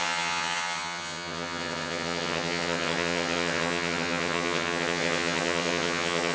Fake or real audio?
fake